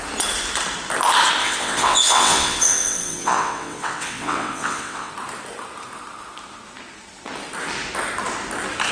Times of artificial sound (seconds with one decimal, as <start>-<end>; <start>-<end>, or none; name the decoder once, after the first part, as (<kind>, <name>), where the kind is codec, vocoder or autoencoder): 1.4-5.1 (vocoder, WaveNeXt)